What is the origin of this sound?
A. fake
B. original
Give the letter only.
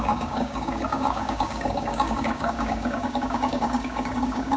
A